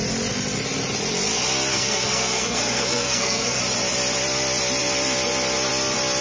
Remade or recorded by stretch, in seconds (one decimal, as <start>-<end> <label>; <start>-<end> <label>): 0.0-1.7 recorded; 1.7-3.6 remade; 3.6-6.2 recorded

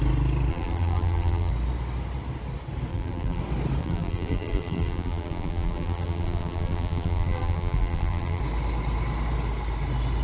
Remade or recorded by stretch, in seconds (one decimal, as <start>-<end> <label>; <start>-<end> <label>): 0.0-0.5 recorded; 0.5-1.5 remade; 1.5-2.9 recorded; 2.9-3.4 remade; 3.4-3.8 recorded; 3.8-8.4 remade; 8.4-10.2 recorded

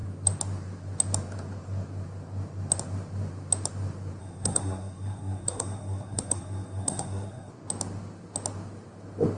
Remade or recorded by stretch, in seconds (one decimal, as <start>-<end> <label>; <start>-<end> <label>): 0.0-4.2 recorded; 4.2-7.5 remade; 7.5-9.4 recorded

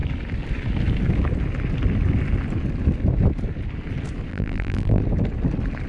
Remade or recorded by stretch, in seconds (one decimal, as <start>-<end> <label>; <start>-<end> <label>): 0.0-4.3 recorded; 4.3-5.0 remade; 5.0-5.9 recorded

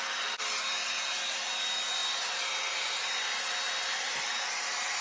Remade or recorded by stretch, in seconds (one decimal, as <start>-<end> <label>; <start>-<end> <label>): 0.0-5.0 recorded

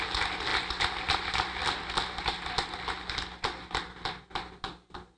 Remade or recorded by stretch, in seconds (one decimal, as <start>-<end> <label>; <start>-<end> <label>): 0.0-5.2 recorded

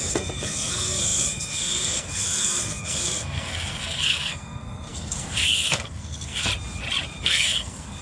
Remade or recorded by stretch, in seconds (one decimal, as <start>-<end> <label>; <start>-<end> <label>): 0.0-6.5 remade; 6.5-7.2 recorded; 7.2-8.0 remade

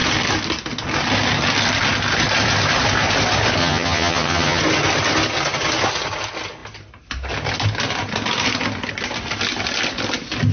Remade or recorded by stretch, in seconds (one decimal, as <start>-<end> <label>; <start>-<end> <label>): 0.0-3.6 recorded; 3.6-4.6 remade; 4.6-10.5 recorded